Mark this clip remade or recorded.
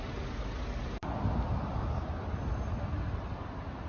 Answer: recorded